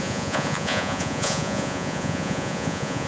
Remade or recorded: remade